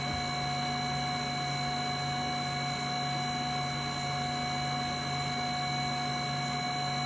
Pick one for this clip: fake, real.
real